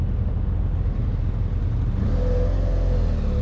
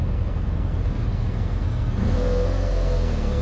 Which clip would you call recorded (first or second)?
first